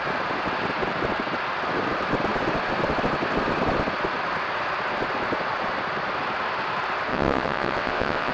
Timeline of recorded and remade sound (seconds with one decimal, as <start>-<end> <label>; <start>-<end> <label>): 0.0-7.1 recorded; 7.1-8.3 remade